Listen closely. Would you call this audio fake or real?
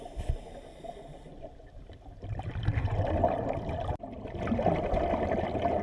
real